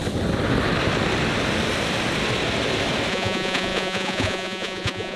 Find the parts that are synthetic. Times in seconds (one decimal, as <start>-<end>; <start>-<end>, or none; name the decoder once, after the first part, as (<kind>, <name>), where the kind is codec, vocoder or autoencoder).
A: 3.1-5.2 (vocoder, Vocos)